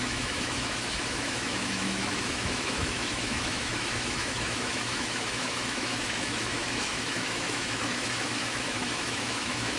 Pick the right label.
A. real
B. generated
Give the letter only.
B